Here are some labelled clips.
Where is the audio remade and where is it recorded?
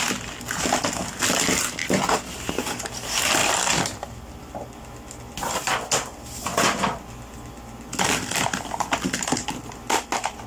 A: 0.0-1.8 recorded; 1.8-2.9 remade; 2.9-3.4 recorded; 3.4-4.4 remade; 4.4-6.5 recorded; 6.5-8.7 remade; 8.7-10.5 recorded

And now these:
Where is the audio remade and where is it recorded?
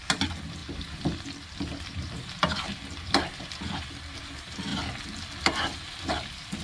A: 0.0-6.6 recorded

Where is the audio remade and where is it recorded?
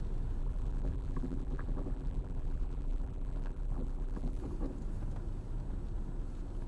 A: 0.0-0.4 recorded; 0.4-4.4 remade; 4.4-6.7 recorded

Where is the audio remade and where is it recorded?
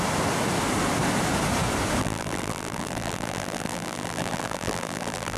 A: 0.0-2.0 recorded; 2.0-5.4 remade